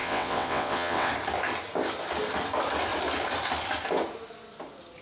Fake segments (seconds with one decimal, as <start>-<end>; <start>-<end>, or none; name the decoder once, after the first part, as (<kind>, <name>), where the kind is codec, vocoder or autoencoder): 0.0-1.1 (vocoder, WaveNeXt)